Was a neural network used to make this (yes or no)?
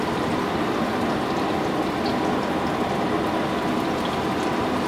no